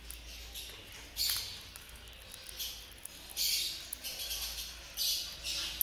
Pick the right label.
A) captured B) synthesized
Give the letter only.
A